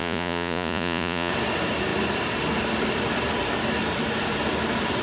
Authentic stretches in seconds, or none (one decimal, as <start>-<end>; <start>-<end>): 1.3-5.0